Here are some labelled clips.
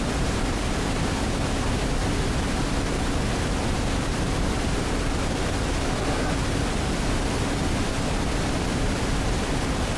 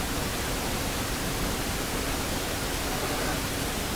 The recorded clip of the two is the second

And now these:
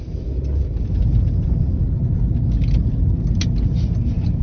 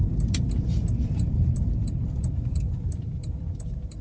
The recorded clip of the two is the first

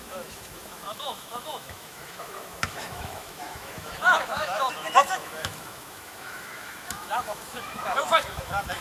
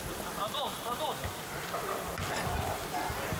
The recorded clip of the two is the second